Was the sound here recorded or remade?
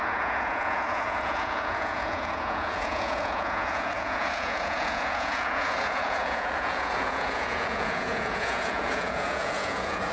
remade